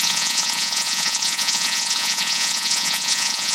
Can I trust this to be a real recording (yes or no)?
no